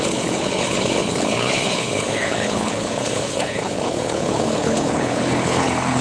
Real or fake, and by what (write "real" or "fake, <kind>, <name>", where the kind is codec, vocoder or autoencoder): fake, codec, HILCodec